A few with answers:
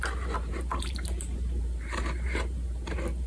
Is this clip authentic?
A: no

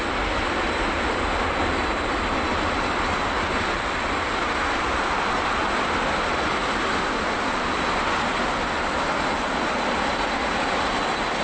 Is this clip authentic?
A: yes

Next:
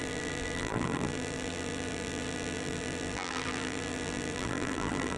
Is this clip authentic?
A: no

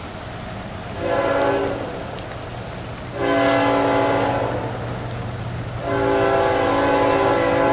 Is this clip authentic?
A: yes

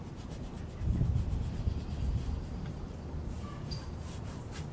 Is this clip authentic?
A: yes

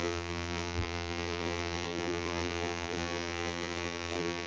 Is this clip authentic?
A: no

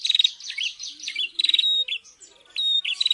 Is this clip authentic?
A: no